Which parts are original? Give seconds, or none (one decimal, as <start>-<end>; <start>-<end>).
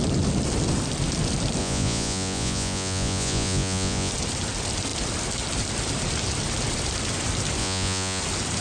0.0-1.6; 4.1-7.6; 8.2-8.6